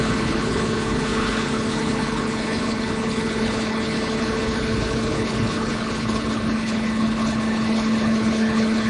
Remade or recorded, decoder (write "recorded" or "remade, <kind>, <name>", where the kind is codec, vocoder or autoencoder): remade, codec, HILCodec